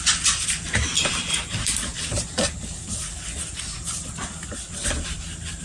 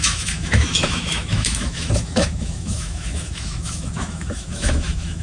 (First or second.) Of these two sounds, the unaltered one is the first